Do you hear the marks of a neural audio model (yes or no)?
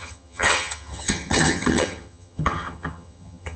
yes